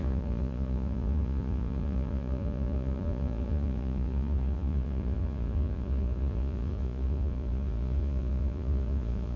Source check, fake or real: fake